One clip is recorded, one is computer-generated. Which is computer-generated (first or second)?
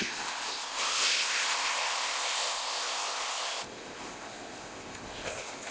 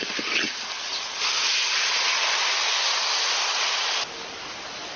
first